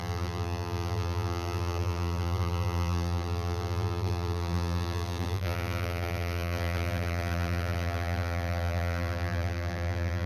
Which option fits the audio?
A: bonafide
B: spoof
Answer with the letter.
B